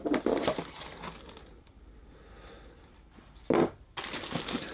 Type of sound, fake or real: real